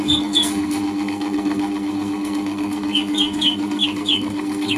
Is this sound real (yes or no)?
no